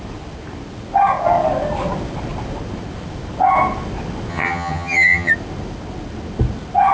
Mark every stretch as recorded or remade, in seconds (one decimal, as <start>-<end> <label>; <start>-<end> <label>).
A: 0.0-4.3 recorded; 4.3-5.3 remade; 5.3-6.9 recorded